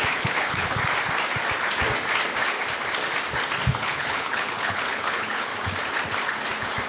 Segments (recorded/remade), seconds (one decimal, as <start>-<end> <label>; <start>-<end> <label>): 0.0-0.8 remade; 0.8-3.7 recorded; 3.7-5.5 remade; 5.5-6.9 recorded